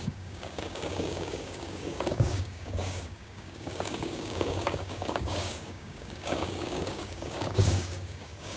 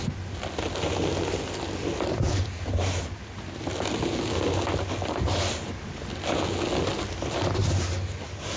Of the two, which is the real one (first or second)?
second